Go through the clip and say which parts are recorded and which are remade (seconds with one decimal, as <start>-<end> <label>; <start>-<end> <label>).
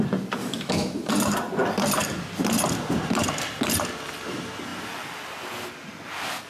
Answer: 0.0-0.4 recorded; 0.4-1.1 remade; 1.1-6.5 recorded